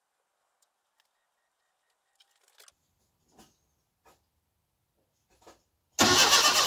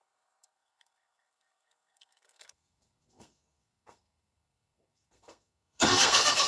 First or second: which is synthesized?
second